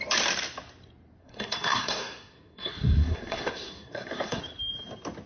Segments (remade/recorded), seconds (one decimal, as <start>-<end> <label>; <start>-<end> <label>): 0.0-1.2 recorded; 1.2-4.4 remade; 4.4-5.3 recorded

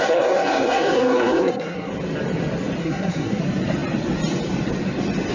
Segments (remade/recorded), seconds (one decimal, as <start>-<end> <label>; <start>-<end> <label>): 0.0-1.9 remade; 1.9-2.8 recorded; 2.8-3.4 remade; 3.4-5.3 recorded

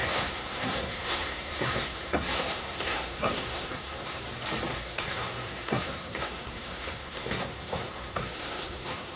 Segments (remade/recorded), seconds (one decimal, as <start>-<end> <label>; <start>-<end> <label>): 0.0-4.2 remade; 4.2-4.7 recorded; 4.7-9.2 remade

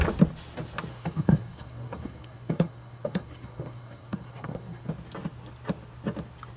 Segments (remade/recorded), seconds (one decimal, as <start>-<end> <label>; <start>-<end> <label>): 0.0-0.9 recorded; 0.9-4.9 remade; 4.9-6.6 recorded

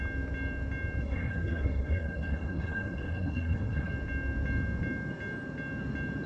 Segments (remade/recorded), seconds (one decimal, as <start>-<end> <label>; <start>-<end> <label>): 0.0-1.0 recorded; 1.0-3.9 remade; 3.9-6.3 recorded

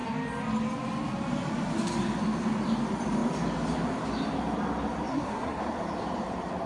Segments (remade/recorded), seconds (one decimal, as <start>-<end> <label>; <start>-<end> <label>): 0.0-5.1 recorded; 5.1-5.6 remade; 5.6-6.7 recorded

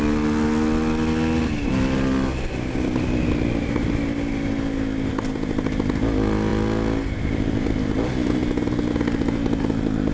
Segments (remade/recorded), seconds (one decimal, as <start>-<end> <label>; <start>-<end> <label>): 0.0-10.1 recorded